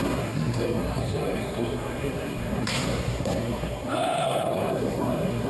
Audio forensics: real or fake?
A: fake